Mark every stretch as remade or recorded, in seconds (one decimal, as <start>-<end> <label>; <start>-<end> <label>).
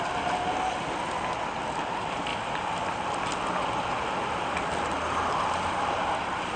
0.0-2.3 recorded; 2.3-6.6 remade